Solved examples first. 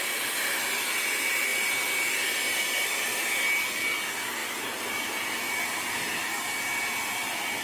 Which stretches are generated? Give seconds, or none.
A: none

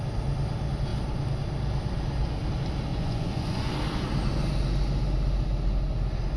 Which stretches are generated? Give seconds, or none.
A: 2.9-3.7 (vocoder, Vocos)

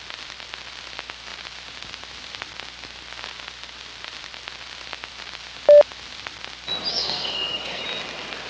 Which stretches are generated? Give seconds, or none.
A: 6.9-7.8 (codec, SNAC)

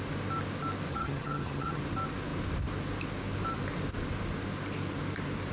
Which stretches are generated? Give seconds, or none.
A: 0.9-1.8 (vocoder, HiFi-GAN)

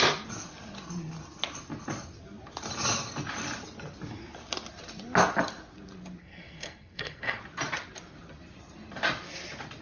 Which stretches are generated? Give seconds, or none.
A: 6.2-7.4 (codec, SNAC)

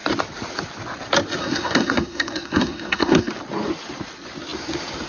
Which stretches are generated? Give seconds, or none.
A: 1.4-3.3 (codec, SNAC)